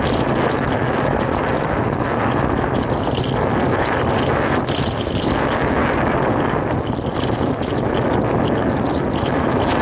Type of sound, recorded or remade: recorded